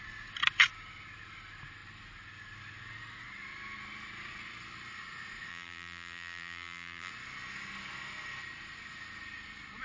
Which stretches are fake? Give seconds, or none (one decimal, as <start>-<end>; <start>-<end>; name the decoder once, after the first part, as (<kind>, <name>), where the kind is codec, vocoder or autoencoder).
5.5-7.1 (vocoder, BigVGAN v2)